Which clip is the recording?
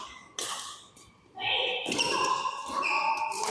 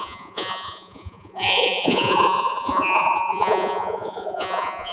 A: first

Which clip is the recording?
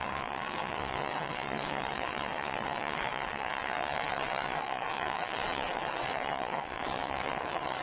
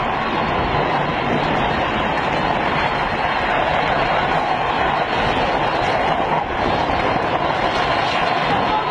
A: second